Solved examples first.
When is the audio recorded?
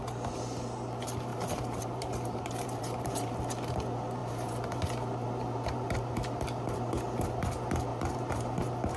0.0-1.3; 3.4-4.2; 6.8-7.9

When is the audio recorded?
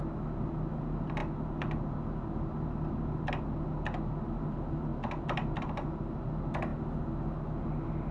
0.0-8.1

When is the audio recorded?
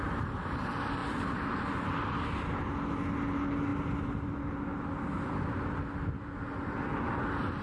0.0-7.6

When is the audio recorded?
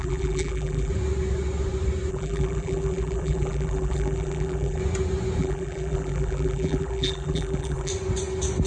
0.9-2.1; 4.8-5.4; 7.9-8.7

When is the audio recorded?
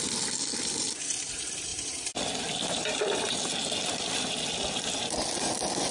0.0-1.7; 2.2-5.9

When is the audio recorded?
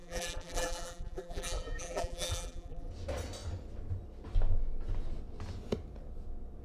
2.9-6.6